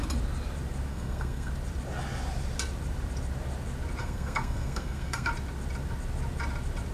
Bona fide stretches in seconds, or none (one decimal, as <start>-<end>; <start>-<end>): 0.0-0.9; 1.5-4.0; 5.3-6.9